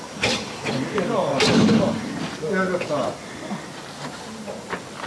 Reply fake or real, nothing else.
real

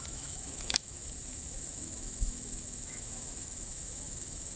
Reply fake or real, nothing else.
fake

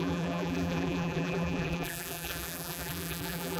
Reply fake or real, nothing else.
fake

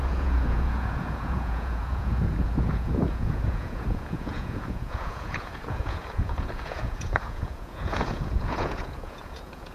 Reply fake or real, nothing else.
fake